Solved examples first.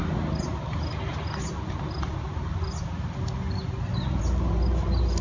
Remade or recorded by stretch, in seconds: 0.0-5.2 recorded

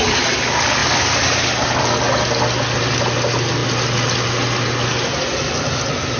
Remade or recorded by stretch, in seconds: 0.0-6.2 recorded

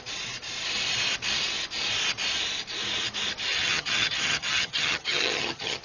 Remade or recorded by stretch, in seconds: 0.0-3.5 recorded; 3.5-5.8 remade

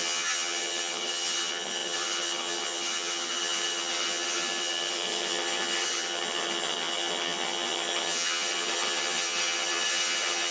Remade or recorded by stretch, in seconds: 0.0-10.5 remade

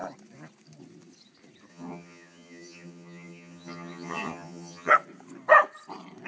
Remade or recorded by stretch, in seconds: 0.0-1.7 recorded; 1.7-4.9 remade; 4.9-6.3 recorded

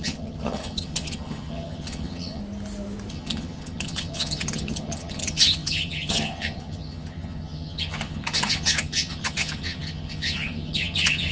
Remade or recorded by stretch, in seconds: 0.0-2.4 remade; 2.4-3.1 recorded; 3.1-11.3 remade

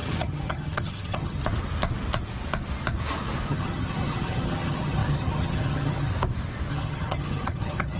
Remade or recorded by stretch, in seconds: 0.0-1.4 remade; 1.4-3.5 recorded; 3.5-6.1 remade; 6.1-6.7 recorded; 6.7-8.0 remade

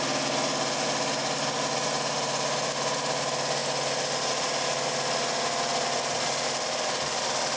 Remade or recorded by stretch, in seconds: 0.0-7.6 recorded